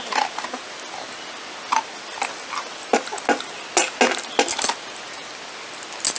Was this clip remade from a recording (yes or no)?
no